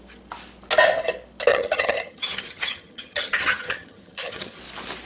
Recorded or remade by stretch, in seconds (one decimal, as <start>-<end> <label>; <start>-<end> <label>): 0.0-1.5 recorded; 1.5-4.6 remade; 4.6-5.1 recorded